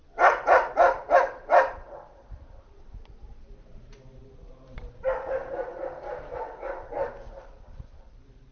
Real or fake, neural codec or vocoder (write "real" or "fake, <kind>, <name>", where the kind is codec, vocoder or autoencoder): fake, vocoder, BigVGAN v2